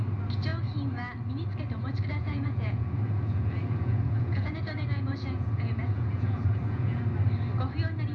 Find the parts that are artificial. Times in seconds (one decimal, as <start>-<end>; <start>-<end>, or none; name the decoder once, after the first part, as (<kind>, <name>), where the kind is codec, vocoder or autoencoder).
2.1-7.0 (vocoder, Vocos)